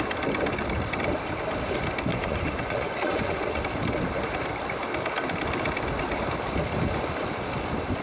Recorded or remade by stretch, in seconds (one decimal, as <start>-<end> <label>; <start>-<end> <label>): 0.0-2.1 recorded; 2.1-3.6 remade; 3.6-8.0 recorded